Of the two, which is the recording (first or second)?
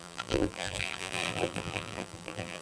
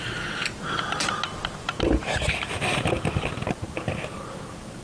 second